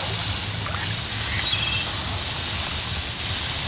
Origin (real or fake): real